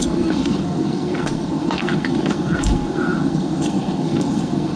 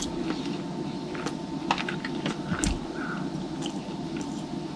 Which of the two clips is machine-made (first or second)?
first